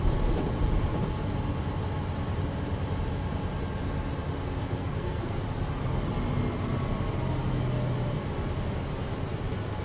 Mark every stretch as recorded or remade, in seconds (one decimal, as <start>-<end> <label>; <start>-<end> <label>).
0.0-4.8 recorded; 4.8-5.4 remade; 5.4-9.8 recorded